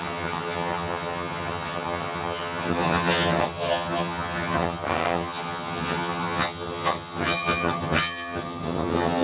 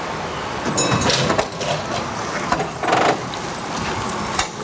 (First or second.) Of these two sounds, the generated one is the first